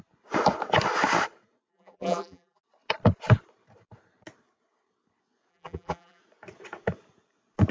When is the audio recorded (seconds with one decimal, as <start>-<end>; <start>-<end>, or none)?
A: 0.0-1.7; 2.6-5.5; 6.2-7.7